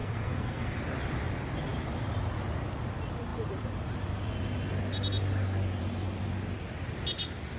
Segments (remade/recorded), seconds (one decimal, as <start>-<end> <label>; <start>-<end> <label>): 0.0-0.8 remade; 0.8-7.6 recorded